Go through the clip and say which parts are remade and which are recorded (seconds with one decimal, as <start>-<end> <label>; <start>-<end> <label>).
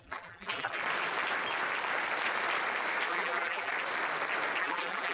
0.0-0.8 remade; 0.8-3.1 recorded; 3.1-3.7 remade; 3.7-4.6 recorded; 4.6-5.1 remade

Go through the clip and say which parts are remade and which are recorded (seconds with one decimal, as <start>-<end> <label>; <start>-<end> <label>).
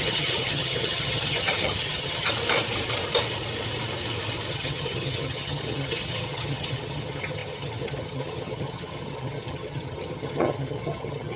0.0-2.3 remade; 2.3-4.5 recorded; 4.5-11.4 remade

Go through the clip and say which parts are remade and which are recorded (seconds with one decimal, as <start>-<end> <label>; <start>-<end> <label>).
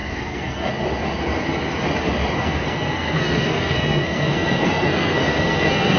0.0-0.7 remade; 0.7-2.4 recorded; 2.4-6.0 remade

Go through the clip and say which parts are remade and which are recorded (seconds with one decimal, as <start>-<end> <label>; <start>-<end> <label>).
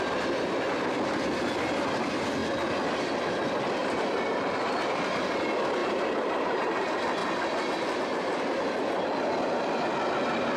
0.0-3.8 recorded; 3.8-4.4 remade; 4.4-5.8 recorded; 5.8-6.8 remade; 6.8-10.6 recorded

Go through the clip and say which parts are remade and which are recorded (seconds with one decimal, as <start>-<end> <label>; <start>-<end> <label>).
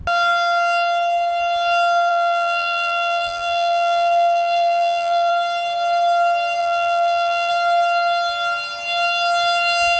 0.0-2.1 recorded; 2.1-5.3 remade; 5.3-6.6 recorded; 6.6-7.5 remade; 7.5-10.0 recorded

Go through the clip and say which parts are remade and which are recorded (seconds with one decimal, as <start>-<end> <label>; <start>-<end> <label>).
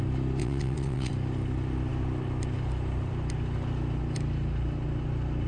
0.0-0.4 recorded; 0.4-1.1 remade; 1.1-5.5 recorded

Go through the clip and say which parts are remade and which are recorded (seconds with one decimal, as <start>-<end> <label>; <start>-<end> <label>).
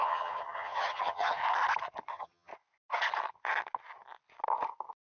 0.0-1.4 remade; 1.4-2.1 recorded; 2.1-2.5 remade; 2.5-5.1 recorded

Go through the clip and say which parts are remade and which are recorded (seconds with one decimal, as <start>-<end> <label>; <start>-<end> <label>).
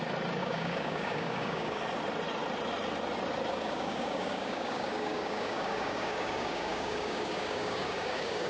0.0-0.4 recorded; 0.4-1.8 remade; 1.8-3.5 recorded; 3.5-8.5 remade